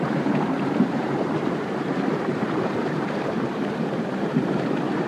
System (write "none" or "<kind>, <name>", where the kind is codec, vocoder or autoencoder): vocoder, BigVGAN v2